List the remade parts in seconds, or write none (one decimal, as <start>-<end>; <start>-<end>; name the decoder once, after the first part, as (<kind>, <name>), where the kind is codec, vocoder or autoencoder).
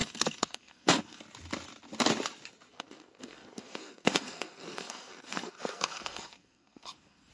0.0-1.2 (codec, SNAC); 2.7-7.3